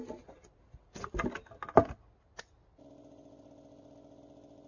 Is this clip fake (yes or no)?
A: no